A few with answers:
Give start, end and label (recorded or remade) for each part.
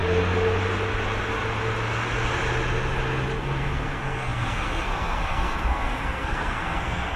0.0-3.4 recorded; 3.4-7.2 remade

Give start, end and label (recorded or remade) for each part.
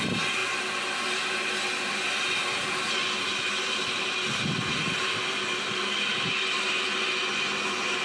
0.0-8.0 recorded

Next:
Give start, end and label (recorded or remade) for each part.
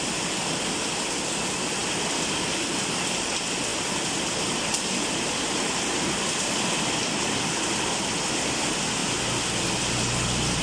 0.0-10.6 recorded